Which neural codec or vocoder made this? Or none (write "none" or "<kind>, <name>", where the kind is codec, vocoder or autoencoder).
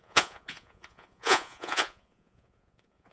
vocoder, Vocos